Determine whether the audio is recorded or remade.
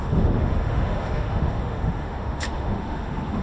remade